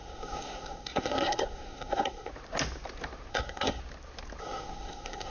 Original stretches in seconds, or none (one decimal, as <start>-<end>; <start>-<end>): 2.3-3.3; 3.8-4.4